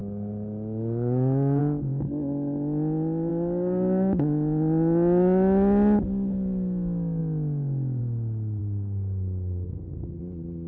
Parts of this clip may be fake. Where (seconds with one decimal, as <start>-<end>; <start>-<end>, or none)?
0.0-1.6; 3.3-4.2; 8.6-10.2